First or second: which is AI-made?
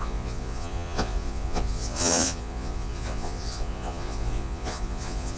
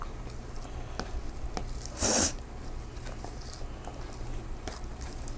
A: first